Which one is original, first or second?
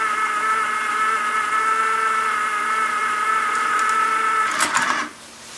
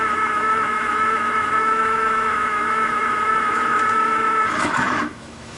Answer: first